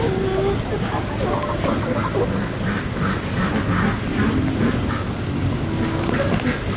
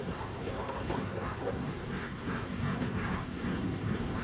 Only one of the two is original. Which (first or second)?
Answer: first